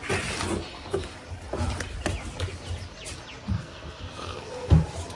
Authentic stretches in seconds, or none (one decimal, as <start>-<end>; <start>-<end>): 0.0-3.5; 4.7-5.2